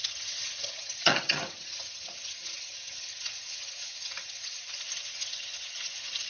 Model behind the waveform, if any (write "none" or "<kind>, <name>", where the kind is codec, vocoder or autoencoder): vocoder, HiFi-GAN